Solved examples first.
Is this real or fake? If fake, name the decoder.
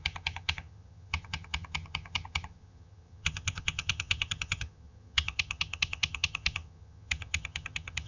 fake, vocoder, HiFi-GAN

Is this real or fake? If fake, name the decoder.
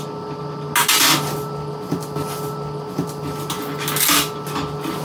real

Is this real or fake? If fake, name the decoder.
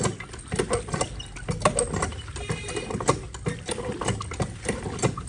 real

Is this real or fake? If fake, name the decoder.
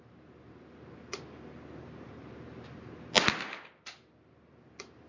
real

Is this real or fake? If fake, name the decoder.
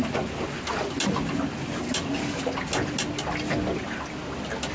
real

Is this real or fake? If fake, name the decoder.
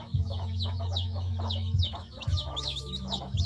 fake, autoencoder, DAC-VAE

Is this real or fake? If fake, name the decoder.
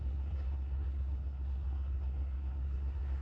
fake, codec, SNAC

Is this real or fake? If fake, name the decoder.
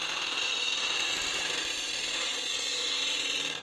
real